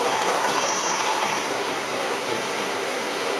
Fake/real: fake